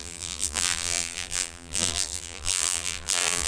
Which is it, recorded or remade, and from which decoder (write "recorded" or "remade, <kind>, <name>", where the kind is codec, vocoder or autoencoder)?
remade, vocoder, BigVGAN v2